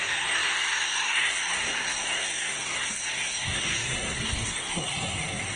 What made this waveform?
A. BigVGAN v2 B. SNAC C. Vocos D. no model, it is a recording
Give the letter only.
B